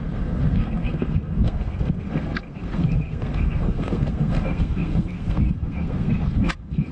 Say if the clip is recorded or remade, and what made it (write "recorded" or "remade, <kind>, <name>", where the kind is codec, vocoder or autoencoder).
remade, codec, SNAC